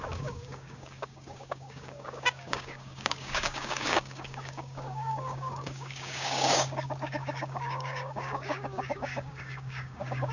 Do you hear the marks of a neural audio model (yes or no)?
yes